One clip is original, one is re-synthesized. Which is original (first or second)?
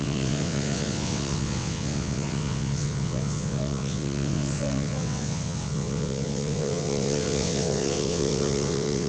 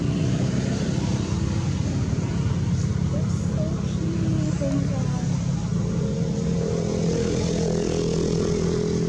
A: second